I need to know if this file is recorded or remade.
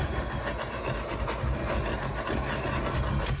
recorded